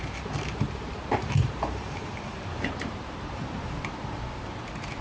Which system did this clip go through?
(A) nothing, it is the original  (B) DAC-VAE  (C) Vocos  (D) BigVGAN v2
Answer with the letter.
D